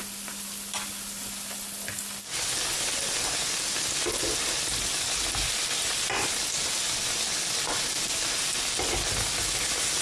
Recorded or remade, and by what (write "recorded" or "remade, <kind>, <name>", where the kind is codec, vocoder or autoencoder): recorded